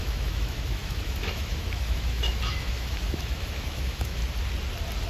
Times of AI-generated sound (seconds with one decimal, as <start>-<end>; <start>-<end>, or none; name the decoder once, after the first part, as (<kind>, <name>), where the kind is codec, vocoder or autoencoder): 0.0-4.2 (autoencoder, DAC-VAE)